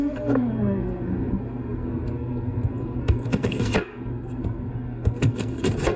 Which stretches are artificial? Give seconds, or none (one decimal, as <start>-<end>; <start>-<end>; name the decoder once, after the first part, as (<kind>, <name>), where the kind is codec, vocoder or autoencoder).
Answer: 0.0-6.0 (codec, SNAC)